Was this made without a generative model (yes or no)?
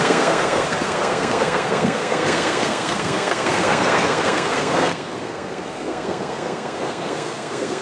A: no